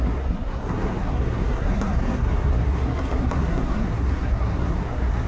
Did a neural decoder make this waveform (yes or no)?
yes